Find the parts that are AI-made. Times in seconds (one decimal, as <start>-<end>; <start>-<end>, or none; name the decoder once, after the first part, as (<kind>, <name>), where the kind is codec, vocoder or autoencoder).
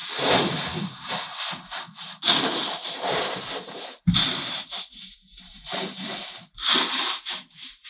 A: 4.0-6.2 (vocoder, BigVGAN v2)